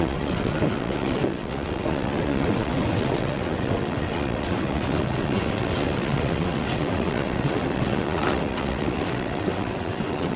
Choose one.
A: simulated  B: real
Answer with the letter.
A